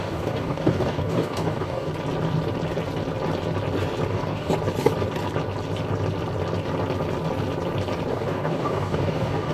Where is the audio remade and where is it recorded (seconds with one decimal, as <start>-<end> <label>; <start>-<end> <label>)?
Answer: 0.0-1.9 remade; 1.9-4.1 recorded; 4.1-4.5 remade; 4.5-8.1 recorded; 8.1-9.5 remade